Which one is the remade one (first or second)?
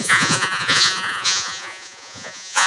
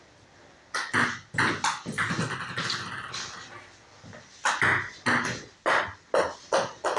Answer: first